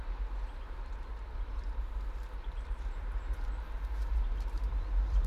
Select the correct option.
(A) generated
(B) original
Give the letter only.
A